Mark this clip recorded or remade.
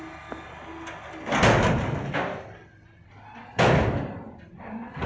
recorded